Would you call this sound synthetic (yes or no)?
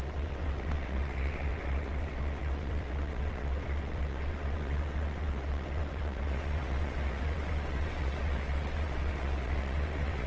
yes